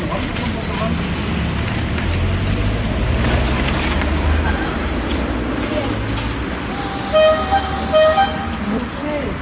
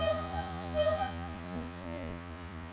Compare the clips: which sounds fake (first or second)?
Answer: second